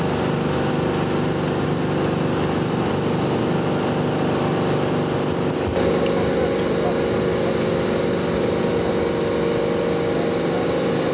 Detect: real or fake real